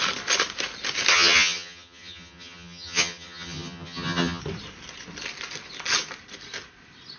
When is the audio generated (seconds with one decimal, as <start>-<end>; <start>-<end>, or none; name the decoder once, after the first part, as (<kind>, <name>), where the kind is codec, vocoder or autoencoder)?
1.1-4.4 (vocoder, HiFi-GAN)